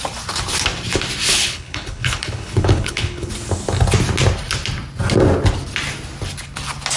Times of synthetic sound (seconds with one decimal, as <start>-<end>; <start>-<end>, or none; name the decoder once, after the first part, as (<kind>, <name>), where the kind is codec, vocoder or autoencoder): 1.3-3.3 (codec, HILCodec)

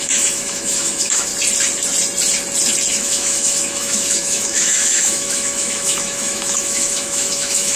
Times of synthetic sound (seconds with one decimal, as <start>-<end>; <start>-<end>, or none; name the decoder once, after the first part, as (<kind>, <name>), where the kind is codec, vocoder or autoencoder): 0.0-1.3 (autoencoder, DAC-VAE); 2.9-7.8

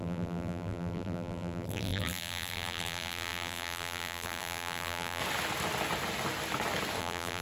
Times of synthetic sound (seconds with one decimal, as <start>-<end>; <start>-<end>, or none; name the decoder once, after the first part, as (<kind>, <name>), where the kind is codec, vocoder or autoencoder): 0.0-5.2 (vocoder, BigVGAN v2); 7.0-7.4